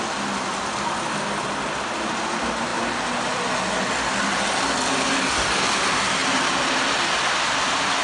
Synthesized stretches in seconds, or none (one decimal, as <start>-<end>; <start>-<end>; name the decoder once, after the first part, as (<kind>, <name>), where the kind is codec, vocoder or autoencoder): none